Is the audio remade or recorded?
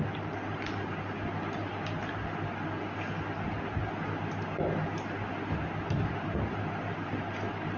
recorded